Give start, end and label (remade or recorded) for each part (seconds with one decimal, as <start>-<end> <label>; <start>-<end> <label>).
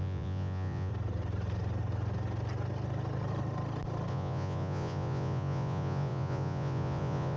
0.0-0.9 remade; 0.9-4.1 recorded; 4.1-7.4 remade